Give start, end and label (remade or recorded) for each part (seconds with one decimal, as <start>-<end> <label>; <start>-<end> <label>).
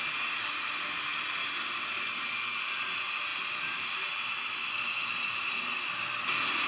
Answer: 0.0-6.7 recorded